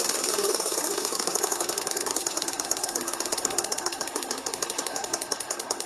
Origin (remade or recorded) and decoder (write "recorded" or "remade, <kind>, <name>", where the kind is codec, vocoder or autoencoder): remade, codec, SNAC